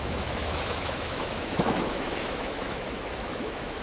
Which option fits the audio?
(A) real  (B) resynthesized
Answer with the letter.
B